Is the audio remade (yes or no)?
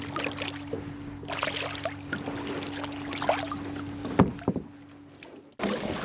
no